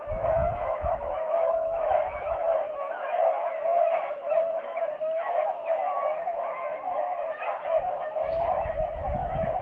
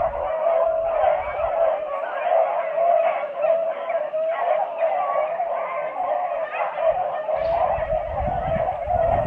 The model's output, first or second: first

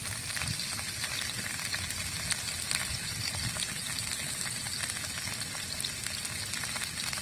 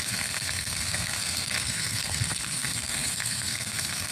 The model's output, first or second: second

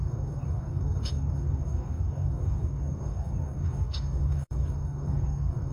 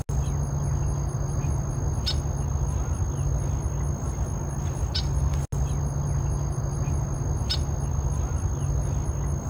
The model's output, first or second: first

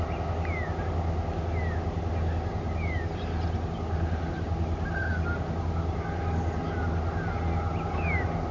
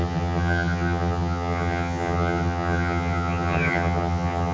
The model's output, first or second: second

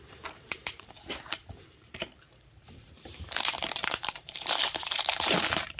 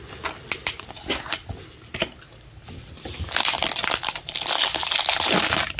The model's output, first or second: first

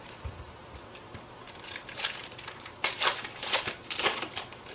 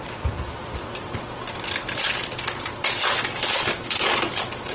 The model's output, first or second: first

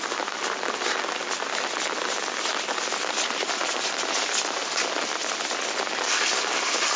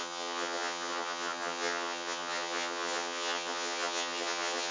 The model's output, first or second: second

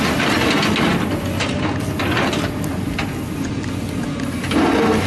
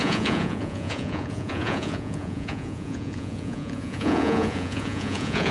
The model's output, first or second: second